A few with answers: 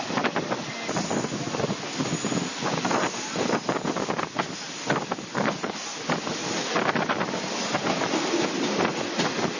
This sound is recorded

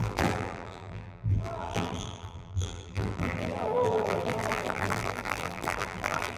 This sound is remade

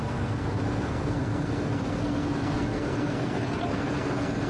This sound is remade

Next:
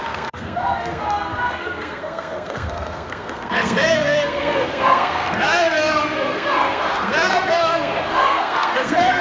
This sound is remade